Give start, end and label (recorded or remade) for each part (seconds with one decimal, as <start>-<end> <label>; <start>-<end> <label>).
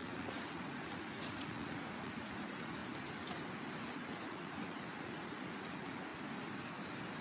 0.0-2.8 remade; 2.8-3.8 recorded; 3.8-6.1 remade; 6.1-7.2 recorded